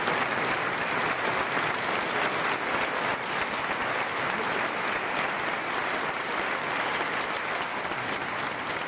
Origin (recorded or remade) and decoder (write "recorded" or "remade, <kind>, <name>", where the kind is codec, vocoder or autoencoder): recorded